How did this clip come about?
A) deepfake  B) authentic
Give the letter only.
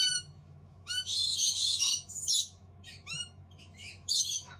A